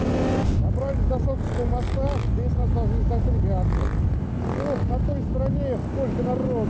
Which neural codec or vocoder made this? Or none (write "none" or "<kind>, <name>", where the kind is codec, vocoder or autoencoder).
none